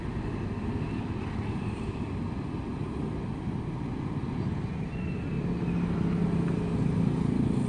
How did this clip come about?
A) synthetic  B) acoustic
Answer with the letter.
B